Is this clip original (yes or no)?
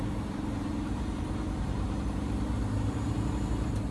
no